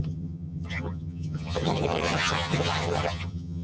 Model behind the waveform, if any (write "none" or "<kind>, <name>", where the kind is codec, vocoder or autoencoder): vocoder, HiFi-GAN